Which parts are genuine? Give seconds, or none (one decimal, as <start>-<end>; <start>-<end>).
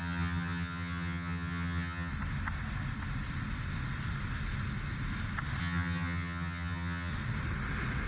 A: 2.1-5.6; 7.1-8.1